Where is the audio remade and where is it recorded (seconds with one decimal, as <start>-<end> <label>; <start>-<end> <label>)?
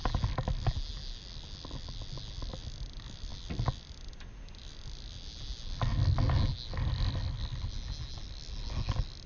0.0-9.3 recorded